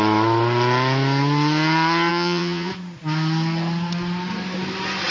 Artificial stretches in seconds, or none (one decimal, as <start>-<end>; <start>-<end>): 2.1-2.7